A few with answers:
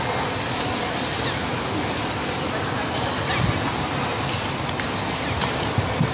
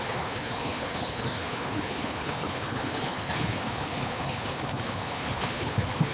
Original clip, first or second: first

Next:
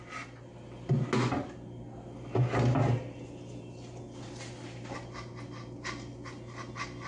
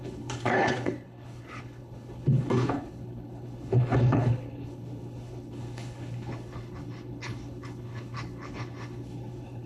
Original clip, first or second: first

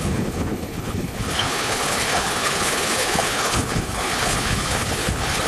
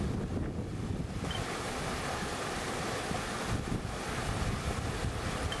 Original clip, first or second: second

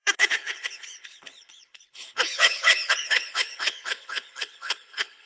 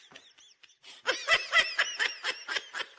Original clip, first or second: second